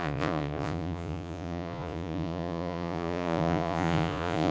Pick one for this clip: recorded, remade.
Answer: remade